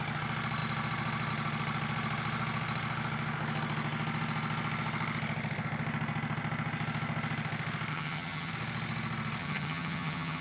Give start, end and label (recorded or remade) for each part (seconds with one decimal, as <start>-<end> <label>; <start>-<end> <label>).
0.0-7.9 recorded; 7.9-8.5 remade; 8.5-9.4 recorded; 9.4-10.4 remade